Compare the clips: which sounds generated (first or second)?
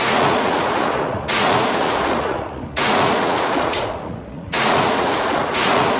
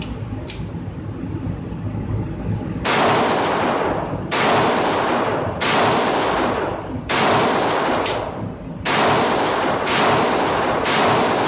first